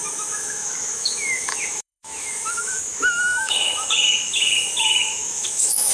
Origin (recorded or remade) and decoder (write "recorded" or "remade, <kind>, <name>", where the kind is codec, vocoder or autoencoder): remade, autoencoder, DAC-VAE